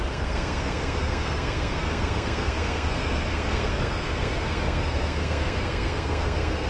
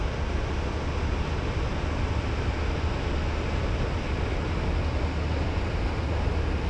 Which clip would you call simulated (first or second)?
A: first